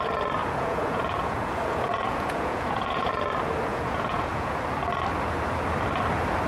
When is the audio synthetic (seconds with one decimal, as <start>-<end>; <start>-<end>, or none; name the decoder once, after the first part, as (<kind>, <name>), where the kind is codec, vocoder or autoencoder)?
0.4-3.1 (vocoder, Vocos); 3.7-4.6